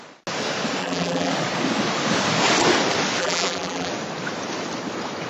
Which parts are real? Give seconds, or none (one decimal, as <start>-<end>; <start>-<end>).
0.0-0.8; 1.3-3.2; 3.9-5.3